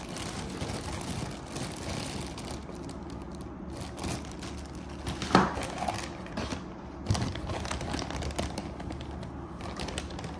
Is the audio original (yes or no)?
yes